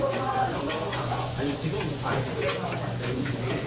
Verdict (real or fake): fake